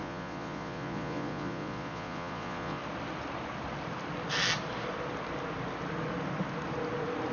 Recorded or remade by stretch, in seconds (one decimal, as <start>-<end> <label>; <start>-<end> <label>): 0.0-2.8 remade; 2.8-7.3 recorded

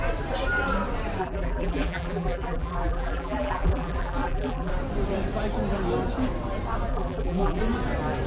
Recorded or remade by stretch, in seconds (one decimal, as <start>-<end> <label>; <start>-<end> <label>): 0.0-1.2 recorded; 1.2-4.7 remade; 4.7-6.9 recorded; 6.9-7.6 remade; 7.6-8.3 recorded

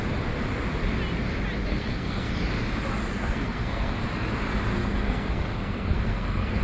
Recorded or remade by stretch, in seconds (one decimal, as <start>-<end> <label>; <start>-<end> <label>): 0.0-1.7 recorded; 1.7-2.3 remade; 2.3-3.2 recorded; 3.2-3.9 remade; 3.9-4.7 recorded; 4.7-6.6 remade

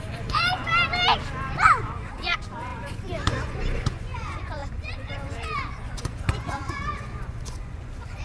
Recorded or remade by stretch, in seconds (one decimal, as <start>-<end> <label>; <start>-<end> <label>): 0.0-0.7 remade; 0.7-1.8 recorded; 1.8-8.2 remade

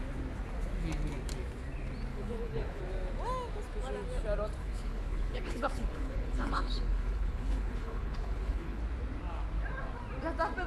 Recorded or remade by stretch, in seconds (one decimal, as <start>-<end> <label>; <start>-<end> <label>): 0.0-2.1 recorded; 2.1-2.8 remade; 2.8-4.6 recorded; 4.6-8.8 remade; 8.8-10.7 recorded

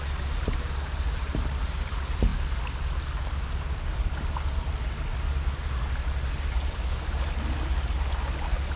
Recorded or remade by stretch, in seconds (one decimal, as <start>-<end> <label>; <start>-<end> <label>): 0.0-8.8 recorded

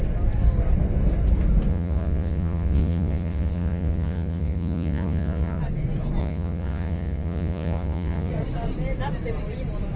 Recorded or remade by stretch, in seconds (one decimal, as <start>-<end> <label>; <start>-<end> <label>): 0.0-1.7 recorded; 1.7-5.6 remade; 5.6-6.2 recorded; 6.2-8.3 remade; 8.3-10.0 recorded